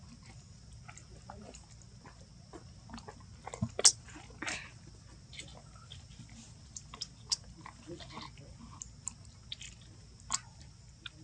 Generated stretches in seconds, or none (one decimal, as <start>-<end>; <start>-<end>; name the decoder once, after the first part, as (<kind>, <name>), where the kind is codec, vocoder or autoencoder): none